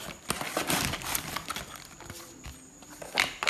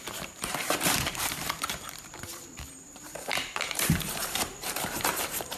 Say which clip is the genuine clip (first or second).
first